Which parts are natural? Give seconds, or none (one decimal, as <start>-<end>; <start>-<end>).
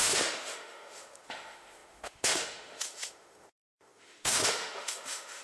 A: none